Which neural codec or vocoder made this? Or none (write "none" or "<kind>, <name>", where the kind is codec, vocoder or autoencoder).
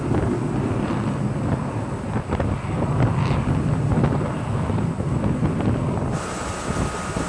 none